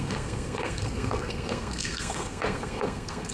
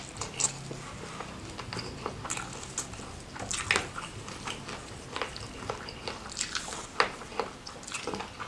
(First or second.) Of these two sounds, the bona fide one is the second